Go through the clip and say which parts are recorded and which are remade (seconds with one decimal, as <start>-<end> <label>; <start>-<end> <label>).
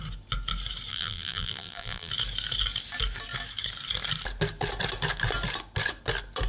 0.0-0.9 recorded; 0.9-2.1 remade; 2.1-6.5 recorded